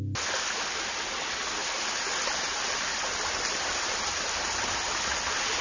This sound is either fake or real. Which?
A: real